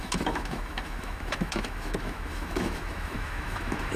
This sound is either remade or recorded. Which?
remade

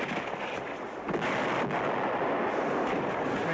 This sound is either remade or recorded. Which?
recorded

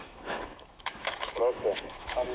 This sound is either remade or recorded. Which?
remade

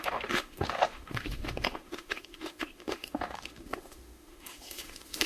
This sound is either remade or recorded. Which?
remade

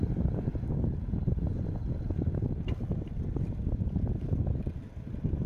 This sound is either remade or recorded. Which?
recorded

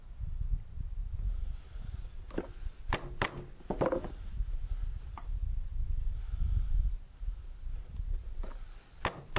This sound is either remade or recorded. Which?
recorded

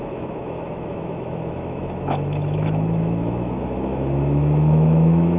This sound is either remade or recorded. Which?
remade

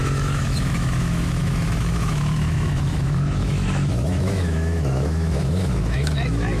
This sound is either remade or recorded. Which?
remade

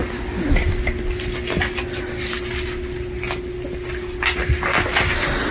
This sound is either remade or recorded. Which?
recorded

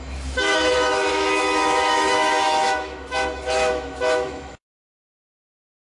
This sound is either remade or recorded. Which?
remade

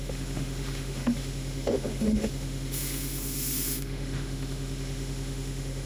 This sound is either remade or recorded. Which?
remade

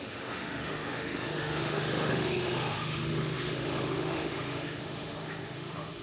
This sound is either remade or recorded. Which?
remade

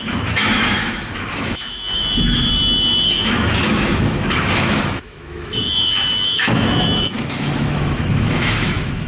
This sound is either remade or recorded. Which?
remade